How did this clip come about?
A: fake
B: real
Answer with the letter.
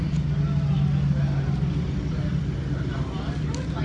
B